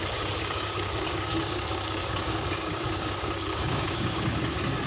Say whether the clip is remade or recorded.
remade